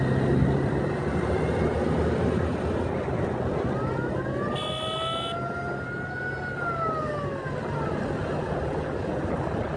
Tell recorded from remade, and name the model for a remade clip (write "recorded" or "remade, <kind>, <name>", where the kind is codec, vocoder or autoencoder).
recorded